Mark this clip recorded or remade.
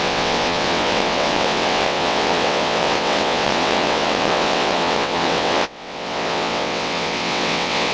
remade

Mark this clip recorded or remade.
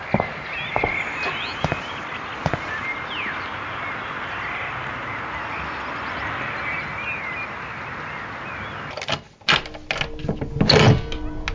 recorded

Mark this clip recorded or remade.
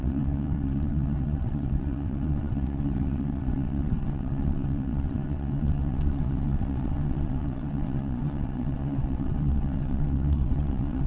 remade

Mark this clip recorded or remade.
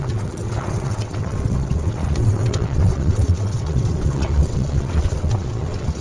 remade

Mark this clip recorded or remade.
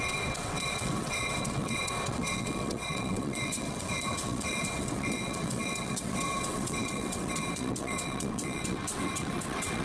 remade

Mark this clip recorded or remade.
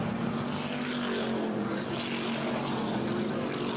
recorded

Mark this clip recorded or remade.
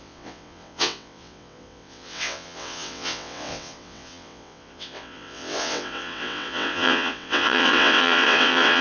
remade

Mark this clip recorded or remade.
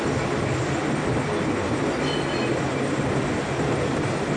recorded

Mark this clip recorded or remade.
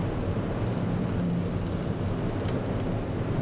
recorded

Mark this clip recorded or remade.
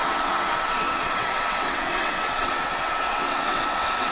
remade